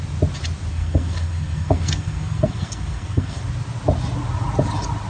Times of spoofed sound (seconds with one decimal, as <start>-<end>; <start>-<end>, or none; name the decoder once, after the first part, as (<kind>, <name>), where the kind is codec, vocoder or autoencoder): 0.7-3.4 (codec, SNAC)